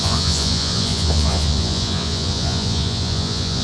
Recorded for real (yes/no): no